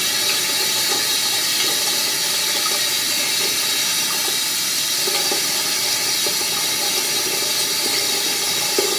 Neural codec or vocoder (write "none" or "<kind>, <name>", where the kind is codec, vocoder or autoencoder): none